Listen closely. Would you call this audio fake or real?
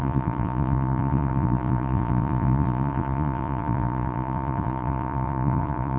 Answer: fake